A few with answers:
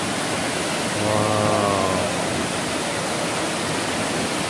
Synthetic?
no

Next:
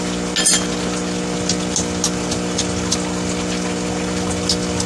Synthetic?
no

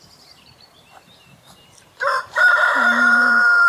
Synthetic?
yes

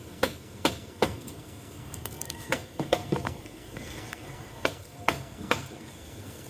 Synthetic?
yes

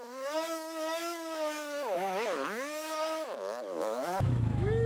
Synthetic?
yes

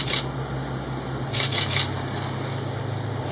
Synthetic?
no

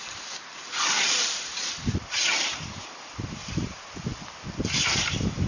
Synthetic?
no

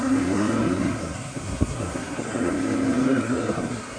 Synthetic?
yes